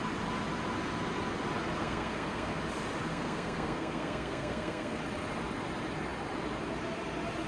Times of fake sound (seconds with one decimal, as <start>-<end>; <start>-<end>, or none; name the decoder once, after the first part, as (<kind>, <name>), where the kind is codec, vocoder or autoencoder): 1.8-2.6 (codec, SNAC); 3.1-5.0